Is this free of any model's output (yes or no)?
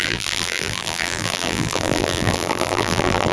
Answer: no